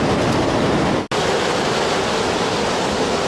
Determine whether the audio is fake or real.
real